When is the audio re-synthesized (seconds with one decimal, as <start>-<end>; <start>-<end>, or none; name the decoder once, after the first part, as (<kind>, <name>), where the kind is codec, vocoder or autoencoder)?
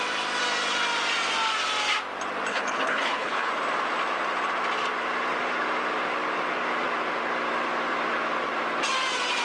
2.5-3.5 (codec, HILCodec)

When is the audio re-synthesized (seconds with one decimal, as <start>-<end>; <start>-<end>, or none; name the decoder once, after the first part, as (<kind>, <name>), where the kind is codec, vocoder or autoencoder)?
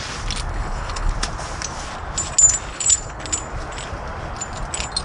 0.5-1.1 (codec, HILCodec); 2.7-3.2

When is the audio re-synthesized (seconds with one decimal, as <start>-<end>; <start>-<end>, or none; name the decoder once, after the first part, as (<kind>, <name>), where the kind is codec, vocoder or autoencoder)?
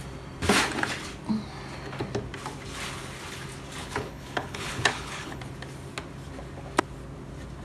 3.8-5.4 (codec, HILCodec)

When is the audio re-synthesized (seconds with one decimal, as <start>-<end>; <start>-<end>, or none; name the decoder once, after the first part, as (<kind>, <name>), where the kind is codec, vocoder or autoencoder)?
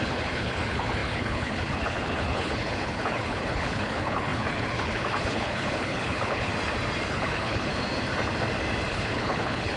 0.0-6.5 (codec, HILCodec); 7.1-7.7; 8.9-9.8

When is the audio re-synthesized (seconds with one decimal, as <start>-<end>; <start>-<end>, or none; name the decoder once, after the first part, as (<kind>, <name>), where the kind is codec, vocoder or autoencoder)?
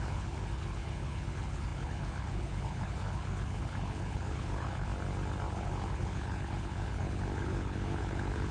0.0-4.9 (codec, HILCodec); 5.5-8.5